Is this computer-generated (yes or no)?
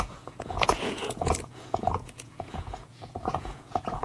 yes